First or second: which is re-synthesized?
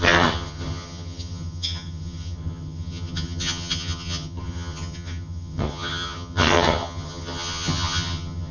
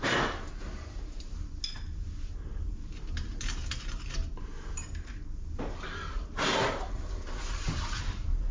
first